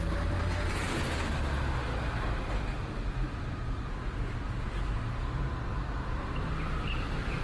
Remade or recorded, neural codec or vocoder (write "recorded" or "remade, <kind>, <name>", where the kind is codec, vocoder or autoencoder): recorded